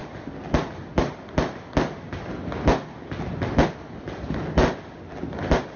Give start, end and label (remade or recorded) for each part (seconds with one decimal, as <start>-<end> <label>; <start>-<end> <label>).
0.0-5.8 recorded